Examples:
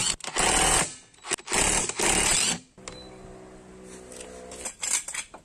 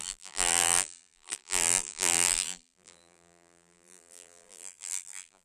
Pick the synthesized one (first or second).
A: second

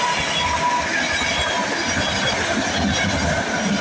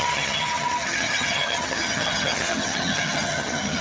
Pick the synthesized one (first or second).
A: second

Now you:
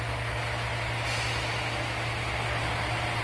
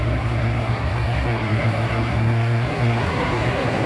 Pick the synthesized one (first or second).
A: second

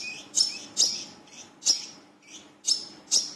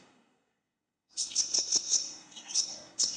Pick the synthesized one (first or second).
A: second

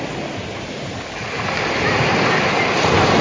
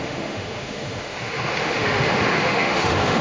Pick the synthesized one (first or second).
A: second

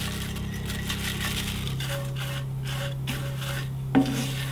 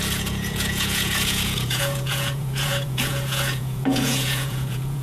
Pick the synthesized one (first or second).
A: second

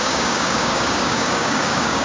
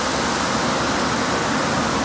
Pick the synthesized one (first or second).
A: first